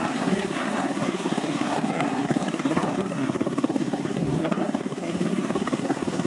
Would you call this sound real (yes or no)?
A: no